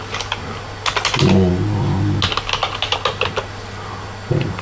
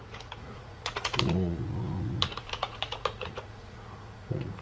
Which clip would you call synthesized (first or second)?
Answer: second